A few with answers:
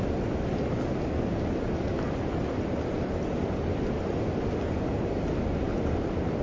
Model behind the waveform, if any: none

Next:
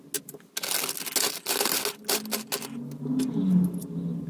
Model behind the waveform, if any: none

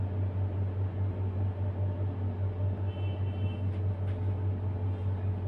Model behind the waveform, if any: none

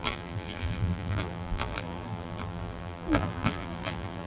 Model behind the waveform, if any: vocoder, BigVGAN v2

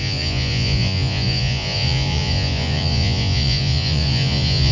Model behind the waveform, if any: vocoder, Vocos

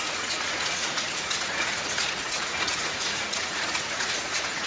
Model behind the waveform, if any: vocoder, Vocos